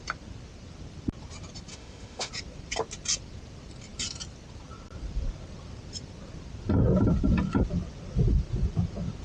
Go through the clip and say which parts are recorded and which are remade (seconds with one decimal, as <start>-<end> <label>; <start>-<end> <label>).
0.0-1.7 recorded; 1.7-2.3 remade; 2.3-9.2 recorded